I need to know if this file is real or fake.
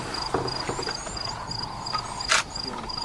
real